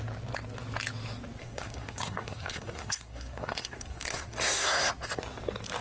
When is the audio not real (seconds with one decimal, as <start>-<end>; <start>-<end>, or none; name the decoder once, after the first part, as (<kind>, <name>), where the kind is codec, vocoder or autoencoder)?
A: 1.4-4.9 (codec, SNAC)